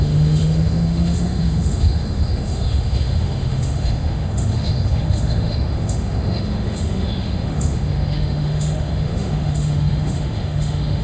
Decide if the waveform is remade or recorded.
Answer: remade